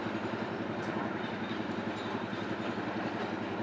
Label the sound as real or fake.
fake